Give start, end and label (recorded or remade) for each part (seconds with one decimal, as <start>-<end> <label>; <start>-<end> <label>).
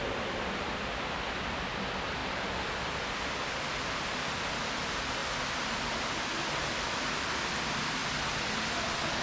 0.0-2.2 remade; 2.2-3.5 recorded; 3.5-5.2 remade; 5.2-7.2 recorded; 7.2-8.0 remade; 8.0-9.2 recorded